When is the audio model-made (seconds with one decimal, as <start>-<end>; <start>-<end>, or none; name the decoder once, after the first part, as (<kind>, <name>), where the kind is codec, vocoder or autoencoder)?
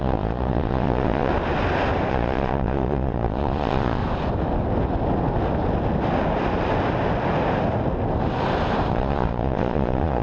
0.0-1.3 (vocoder, Vocos); 2.1-4.0; 8.9-10.2